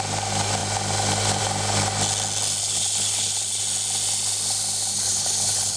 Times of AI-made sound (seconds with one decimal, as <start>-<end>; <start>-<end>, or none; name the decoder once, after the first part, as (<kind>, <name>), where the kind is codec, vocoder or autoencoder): 2.6-3.6 (codec, HILCodec); 4.9-5.8